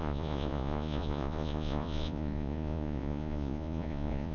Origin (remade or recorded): remade